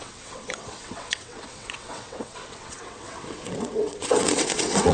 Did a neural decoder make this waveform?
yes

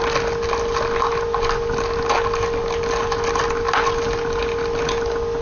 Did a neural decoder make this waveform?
no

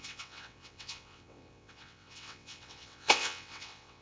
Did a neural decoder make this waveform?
yes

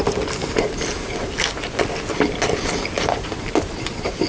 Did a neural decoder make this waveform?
no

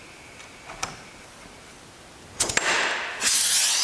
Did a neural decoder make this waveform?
no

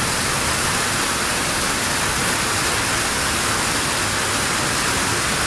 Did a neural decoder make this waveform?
no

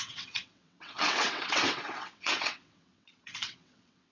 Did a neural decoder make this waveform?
yes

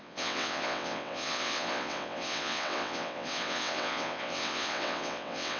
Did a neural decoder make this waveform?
yes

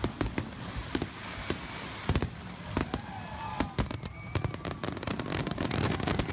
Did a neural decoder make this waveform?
no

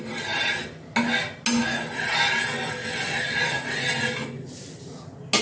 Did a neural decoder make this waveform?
no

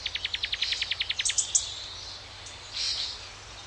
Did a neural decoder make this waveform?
no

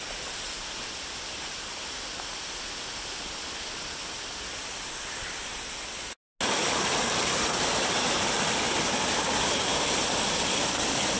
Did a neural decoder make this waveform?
no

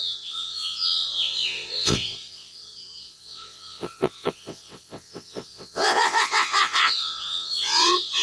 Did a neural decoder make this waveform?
yes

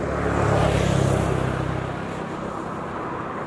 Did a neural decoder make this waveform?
no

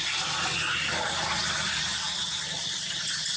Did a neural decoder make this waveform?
no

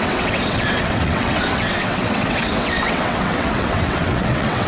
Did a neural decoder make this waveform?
yes